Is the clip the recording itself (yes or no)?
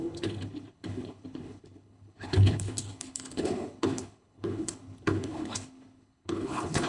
no